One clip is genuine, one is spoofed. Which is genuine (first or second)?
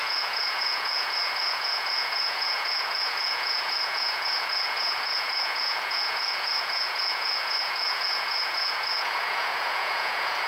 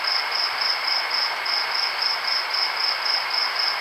second